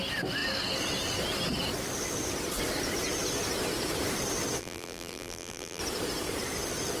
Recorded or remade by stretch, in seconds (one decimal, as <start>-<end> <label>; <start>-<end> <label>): 0.0-4.6 recorded; 4.6-5.8 remade; 5.8-7.0 recorded

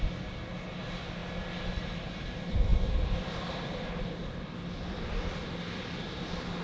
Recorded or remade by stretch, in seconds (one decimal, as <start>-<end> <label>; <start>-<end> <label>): 0.0-6.6 recorded

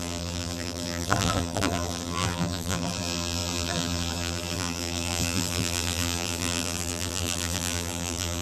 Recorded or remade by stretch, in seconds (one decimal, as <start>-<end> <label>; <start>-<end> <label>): 0.0-8.4 remade

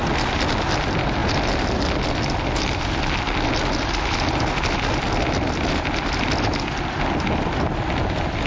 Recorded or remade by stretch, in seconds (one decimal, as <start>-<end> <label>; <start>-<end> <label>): 0.0-8.5 recorded

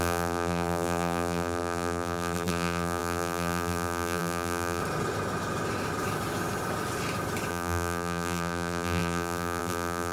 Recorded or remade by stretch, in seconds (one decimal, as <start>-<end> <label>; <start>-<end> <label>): 0.0-4.8 remade; 4.8-7.5 recorded; 7.5-10.1 remade

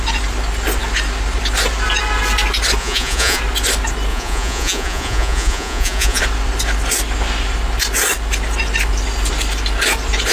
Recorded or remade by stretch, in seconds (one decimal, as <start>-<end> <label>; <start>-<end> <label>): 0.0-2.8 recorded; 2.8-3.4 remade; 3.4-4.1 recorded; 4.1-6.2 remade; 6.2-10.3 recorded